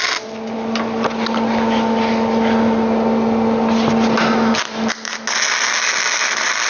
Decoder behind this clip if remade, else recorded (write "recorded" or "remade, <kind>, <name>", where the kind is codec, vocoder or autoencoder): recorded